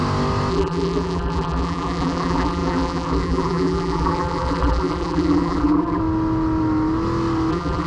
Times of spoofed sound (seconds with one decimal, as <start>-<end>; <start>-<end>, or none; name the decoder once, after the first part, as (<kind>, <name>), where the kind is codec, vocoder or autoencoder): 0.5-6.0 (vocoder, BigVGAN v2); 7.5-7.9